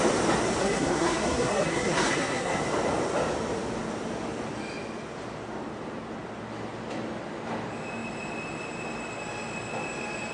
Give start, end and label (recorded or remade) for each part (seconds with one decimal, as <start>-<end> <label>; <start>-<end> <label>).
0.0-0.6 recorded; 0.6-2.6 remade; 2.6-10.3 recorded